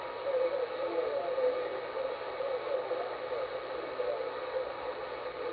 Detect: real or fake real